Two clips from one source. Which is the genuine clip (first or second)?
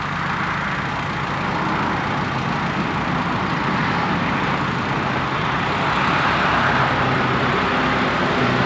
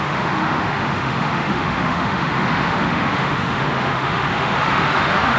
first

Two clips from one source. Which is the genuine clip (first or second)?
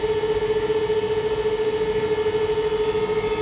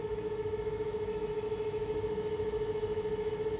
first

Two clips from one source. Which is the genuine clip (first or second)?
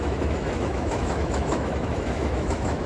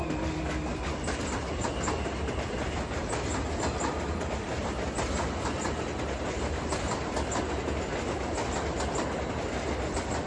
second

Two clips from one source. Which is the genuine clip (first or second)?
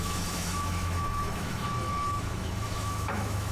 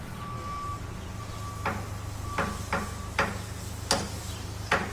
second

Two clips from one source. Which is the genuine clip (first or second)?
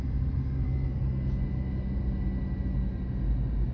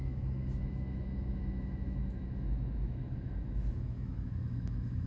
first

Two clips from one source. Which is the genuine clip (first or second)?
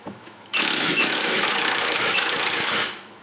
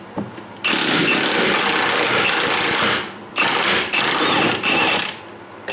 second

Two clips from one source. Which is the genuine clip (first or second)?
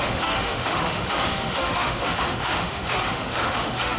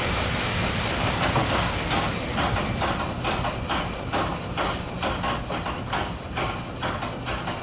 second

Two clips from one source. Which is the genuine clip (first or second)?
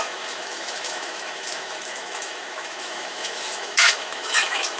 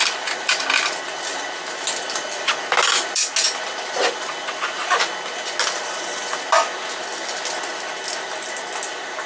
second